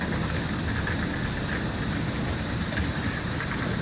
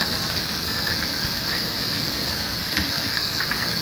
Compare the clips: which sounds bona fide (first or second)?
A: first